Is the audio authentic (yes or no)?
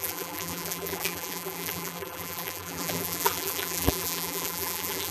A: no